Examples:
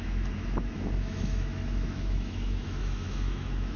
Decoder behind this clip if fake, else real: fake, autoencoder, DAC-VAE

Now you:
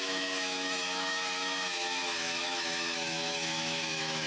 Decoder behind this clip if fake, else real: fake, autoencoder, DAC-VAE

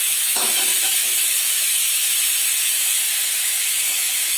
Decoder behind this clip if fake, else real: fake, autoencoder, DAC-VAE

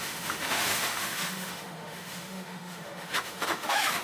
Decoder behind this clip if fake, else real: fake, autoencoder, DAC-VAE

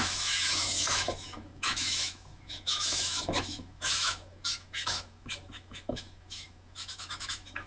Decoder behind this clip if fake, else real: fake, autoencoder, DAC-VAE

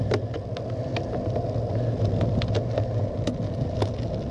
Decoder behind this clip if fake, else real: real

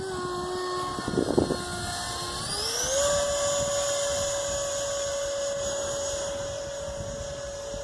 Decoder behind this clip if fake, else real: real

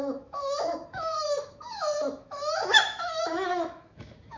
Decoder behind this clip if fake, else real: fake, autoencoder, DAC-VAE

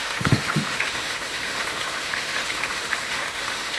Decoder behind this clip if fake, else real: fake, autoencoder, DAC-VAE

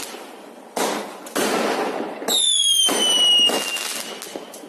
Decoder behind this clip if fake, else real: real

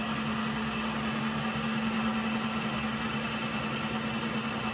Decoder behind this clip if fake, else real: real